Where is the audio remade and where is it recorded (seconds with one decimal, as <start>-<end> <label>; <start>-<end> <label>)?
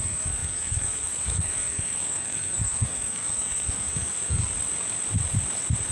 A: 0.0-4.4 remade; 4.4-5.9 recorded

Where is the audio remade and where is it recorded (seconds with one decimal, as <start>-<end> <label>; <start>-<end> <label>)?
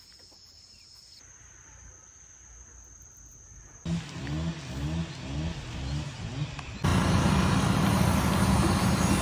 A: 0.0-9.2 recorded